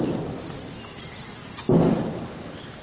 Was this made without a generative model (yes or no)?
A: yes